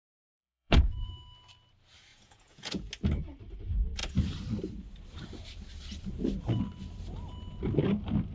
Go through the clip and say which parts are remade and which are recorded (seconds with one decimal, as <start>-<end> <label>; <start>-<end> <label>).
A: 0.0-1.1 remade; 1.1-2.1 recorded; 2.1-2.8 remade; 2.8-8.3 recorded